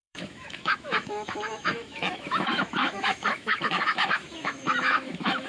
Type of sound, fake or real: fake